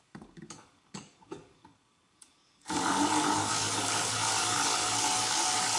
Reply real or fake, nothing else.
fake